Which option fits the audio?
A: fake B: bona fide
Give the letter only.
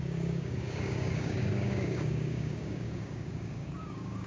A